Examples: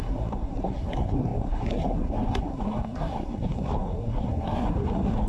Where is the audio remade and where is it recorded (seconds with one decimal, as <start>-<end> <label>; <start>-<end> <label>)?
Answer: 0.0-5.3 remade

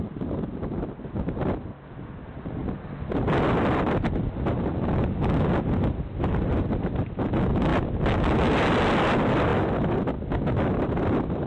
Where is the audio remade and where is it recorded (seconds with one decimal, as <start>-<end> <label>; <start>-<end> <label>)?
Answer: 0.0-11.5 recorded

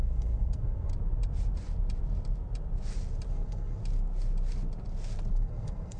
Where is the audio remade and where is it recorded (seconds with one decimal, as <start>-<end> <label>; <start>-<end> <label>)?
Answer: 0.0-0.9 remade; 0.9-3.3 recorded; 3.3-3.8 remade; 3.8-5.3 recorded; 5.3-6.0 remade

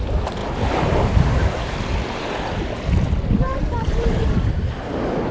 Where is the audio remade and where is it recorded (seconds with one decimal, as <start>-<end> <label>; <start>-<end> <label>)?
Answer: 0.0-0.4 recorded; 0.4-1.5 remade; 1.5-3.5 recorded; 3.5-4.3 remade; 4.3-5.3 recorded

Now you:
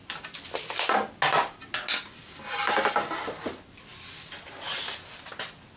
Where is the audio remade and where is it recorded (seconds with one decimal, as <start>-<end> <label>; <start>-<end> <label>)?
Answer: 0.0-5.8 recorded

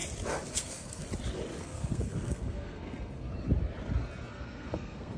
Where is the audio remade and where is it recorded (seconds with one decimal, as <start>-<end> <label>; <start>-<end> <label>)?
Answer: 0.0-0.5 recorded; 0.5-1.0 remade; 1.0-1.6 recorded; 1.6-3.3 remade; 3.3-4.3 recorded; 4.3-5.2 remade

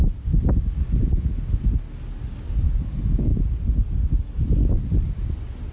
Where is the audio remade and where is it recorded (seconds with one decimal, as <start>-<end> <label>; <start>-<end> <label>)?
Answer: 0.0-5.7 recorded